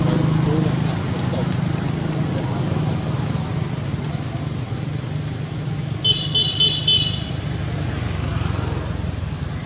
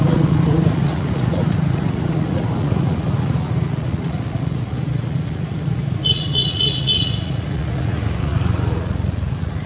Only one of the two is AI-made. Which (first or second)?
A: second